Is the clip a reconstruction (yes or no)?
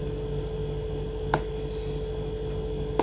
no